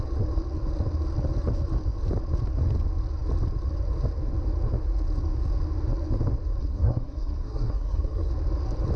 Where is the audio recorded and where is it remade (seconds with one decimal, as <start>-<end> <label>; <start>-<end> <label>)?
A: 0.0-6.6 recorded; 6.6-8.3 remade; 8.3-9.0 recorded